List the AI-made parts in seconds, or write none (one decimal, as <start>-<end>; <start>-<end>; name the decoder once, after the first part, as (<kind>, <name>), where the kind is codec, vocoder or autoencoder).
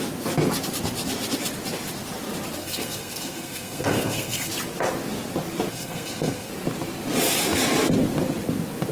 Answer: 2.6-4.5 (codec, SNAC); 5.7-6.5